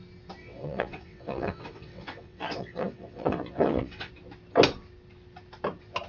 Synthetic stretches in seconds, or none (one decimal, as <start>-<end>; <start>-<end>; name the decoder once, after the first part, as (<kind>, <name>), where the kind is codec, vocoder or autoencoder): 0.4-4.1 (vocoder, WaveNeXt)